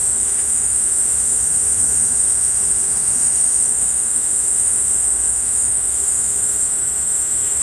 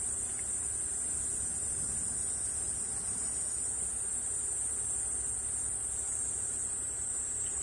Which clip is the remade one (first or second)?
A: first